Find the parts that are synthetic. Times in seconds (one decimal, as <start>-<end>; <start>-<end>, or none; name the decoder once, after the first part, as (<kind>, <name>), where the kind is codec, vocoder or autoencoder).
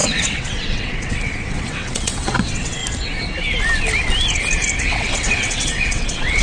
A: 0.0-2.8 (vocoder, WaveNeXt); 4.8-6.4